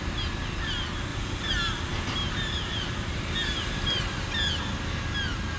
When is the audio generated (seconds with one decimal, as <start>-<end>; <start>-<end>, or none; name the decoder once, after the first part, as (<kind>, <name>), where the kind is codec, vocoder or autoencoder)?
1.1-4.5 (vocoder, BigVGAN v2)

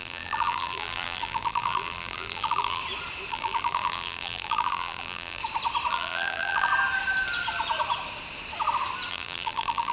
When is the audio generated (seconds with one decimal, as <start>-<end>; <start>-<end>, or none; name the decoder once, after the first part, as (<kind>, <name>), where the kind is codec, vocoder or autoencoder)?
0.0-2.8 (vocoder, BigVGAN v2); 3.3-5.4; 5.9-6.7; 9.1-9.9

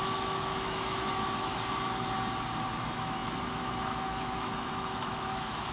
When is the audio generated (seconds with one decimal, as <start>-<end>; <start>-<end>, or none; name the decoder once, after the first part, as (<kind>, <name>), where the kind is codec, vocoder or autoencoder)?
0.0-1.5 (autoencoder, DAC-VAE); 2.7-5.7

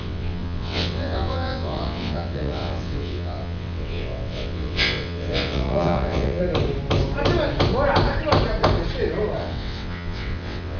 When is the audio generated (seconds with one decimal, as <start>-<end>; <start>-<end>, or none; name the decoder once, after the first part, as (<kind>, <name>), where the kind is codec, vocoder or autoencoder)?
0.0-6.4 (vocoder, WaveNeXt); 9.4-10.8